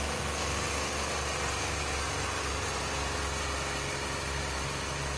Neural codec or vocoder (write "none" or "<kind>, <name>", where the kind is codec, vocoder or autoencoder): none